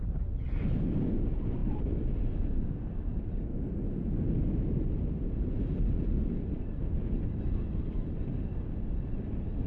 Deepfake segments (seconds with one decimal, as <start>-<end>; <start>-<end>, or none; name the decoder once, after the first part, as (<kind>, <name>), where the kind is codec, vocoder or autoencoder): none